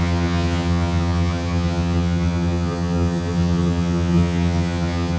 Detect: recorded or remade remade